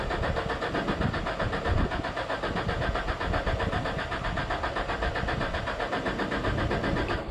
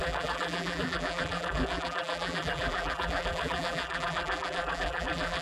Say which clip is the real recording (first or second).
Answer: first